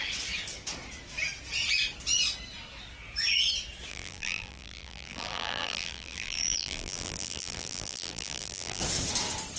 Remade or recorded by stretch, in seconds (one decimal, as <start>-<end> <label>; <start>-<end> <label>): 0.0-3.9 recorded; 3.9-8.8 remade; 8.8-9.6 recorded